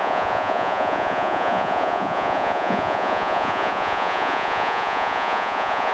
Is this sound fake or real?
fake